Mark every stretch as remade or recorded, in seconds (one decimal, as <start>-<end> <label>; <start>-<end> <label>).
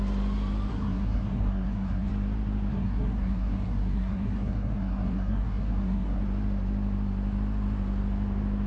0.0-0.7 recorded; 0.7-2.1 remade; 2.1-2.7 recorded; 2.7-6.2 remade; 6.2-8.7 recorded